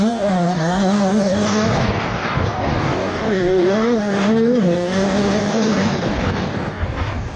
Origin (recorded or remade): remade